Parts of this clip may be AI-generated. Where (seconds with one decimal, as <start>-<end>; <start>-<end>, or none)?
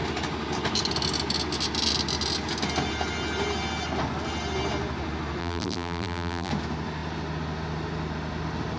5.4-6.5